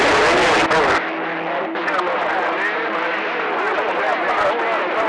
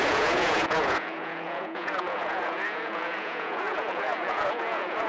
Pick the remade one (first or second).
second